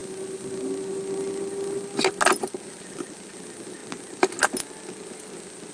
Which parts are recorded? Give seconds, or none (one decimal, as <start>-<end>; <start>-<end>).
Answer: 0.0-5.7